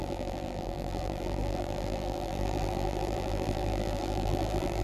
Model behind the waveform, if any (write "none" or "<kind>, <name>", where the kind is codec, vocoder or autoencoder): vocoder, BigVGAN v2